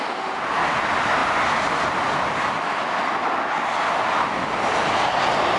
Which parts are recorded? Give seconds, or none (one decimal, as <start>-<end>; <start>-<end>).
0.0-5.6